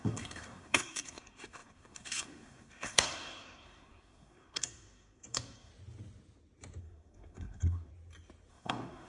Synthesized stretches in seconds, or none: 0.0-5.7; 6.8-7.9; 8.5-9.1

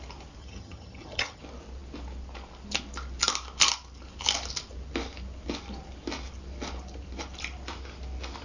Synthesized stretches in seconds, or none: 0.4-1.4